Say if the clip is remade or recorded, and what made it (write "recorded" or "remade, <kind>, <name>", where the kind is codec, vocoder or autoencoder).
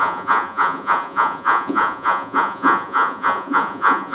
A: remade, vocoder, Vocos